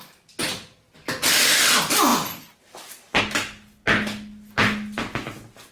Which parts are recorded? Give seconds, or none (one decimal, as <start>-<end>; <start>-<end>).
0.0-0.4; 1.6-2.1; 3.2-5.7